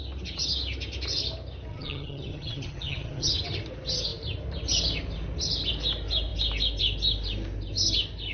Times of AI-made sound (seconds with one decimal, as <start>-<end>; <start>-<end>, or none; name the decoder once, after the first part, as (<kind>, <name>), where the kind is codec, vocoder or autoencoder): 1.7-3.3 (vocoder, HiFi-GAN)